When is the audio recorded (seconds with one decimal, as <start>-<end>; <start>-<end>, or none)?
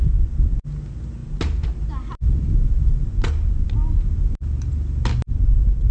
0.0-5.9